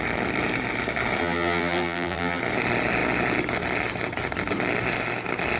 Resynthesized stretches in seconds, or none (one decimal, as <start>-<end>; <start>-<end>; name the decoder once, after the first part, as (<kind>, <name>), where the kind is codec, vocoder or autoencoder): 1.2-2.4 (vocoder, BigVGAN v2)